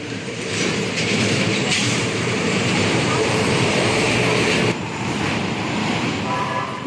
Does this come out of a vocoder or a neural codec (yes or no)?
yes